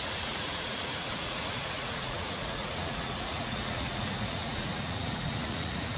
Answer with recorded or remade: remade